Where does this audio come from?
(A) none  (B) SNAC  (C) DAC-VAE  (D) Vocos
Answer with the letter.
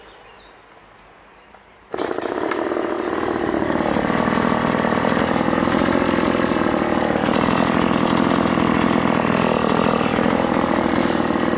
A